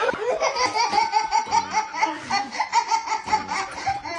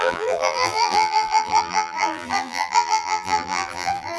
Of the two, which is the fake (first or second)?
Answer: second